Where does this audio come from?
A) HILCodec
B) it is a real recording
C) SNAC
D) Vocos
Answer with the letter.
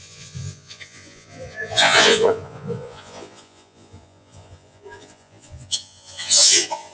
D